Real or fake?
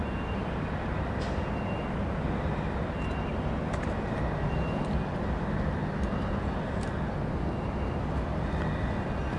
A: real